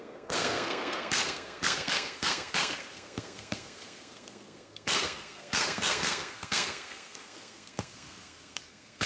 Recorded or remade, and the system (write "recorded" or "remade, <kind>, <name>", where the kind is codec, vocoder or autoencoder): remade, codec, SNAC